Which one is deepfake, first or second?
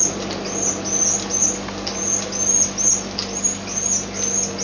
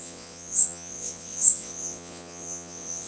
second